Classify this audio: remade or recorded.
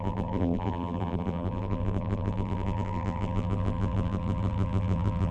remade